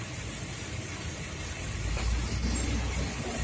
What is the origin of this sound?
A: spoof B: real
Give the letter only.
A